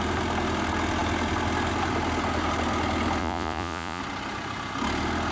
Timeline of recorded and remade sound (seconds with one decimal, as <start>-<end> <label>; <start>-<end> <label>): 0.0-3.2 recorded; 3.2-4.0 remade; 4.0-5.3 recorded